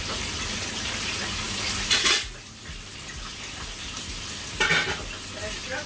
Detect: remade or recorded recorded